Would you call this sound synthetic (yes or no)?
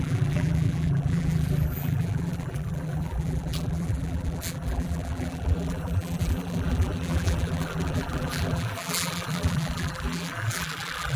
yes